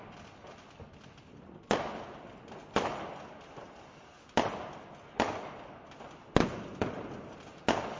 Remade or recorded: recorded